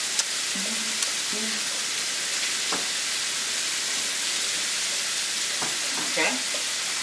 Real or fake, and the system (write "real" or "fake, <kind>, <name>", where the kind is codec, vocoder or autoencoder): real